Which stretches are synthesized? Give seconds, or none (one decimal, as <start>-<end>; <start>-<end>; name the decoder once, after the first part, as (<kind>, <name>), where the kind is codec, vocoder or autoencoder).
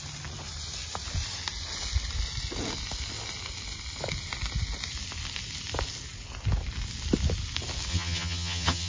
7.9-8.9 (vocoder, HiFi-GAN)